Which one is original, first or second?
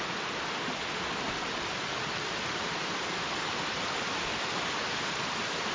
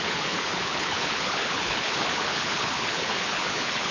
first